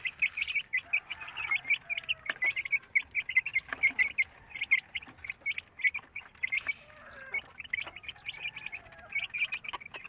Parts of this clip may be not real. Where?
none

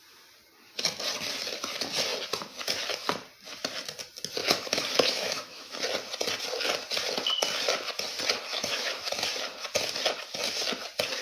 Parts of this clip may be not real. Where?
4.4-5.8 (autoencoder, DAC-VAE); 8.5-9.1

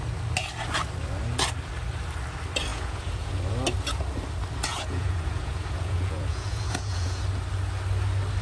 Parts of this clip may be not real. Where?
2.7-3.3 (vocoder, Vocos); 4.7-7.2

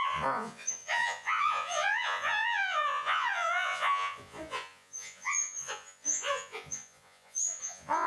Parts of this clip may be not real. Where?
0.0-8.1 (vocoder, Vocos)

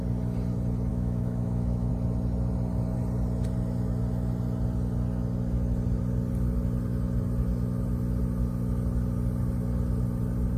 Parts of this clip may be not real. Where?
0.9-1.9 (autoencoder, DAC-VAE)

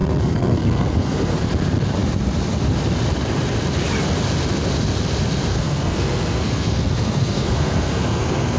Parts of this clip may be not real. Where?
0.0-1.4 (codec, SNAC); 5.5-8.6

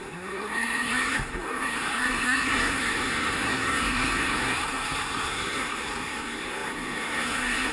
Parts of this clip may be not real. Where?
0.0-7.7 (codec, SNAC)